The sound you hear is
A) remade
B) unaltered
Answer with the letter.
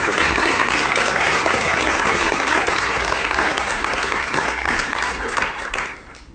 A